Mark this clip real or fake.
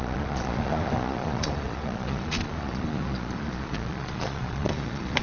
fake